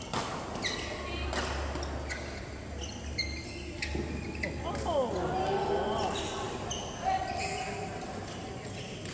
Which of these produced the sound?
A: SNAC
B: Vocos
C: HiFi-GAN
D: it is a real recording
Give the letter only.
D